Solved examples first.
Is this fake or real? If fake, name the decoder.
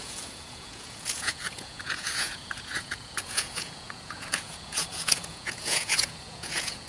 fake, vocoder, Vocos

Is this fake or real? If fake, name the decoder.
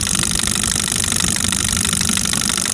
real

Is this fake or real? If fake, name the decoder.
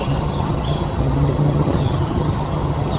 fake, vocoder, HiFi-GAN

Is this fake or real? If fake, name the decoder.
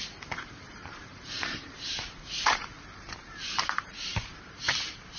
fake, vocoder, BigVGAN v2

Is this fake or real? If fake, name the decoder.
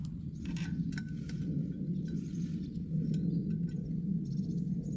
real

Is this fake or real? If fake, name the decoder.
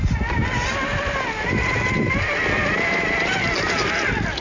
real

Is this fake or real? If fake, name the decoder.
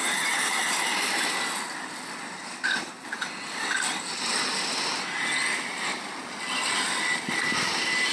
real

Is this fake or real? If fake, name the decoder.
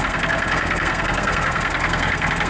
fake, codec, SNAC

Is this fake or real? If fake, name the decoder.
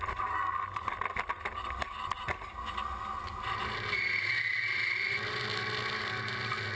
real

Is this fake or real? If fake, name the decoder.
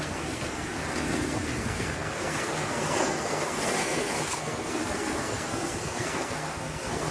fake, codec, SNAC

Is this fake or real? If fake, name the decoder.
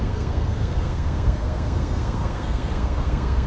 fake, codec, SNAC